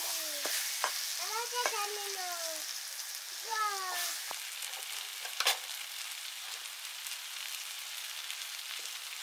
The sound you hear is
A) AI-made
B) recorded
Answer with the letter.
B